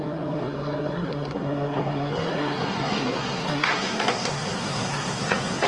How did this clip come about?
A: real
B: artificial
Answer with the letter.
B